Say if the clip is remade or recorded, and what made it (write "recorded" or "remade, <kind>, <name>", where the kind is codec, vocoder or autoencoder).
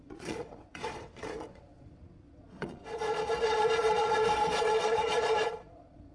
remade, vocoder, Vocos